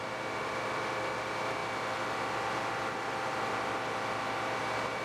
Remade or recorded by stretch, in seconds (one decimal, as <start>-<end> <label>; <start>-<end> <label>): 0.0-5.0 recorded